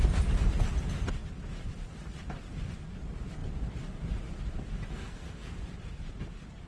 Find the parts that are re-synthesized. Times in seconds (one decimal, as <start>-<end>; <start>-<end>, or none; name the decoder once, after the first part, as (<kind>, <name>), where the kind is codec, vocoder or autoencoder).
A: 4.9-5.5 (codec, SNAC)